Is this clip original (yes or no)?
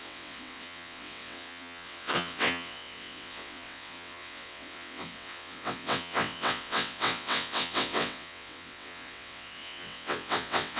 no